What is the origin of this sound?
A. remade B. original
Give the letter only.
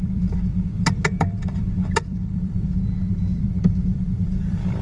A